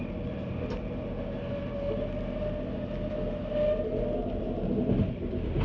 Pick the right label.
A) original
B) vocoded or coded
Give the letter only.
A